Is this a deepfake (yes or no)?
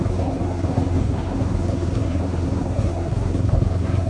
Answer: yes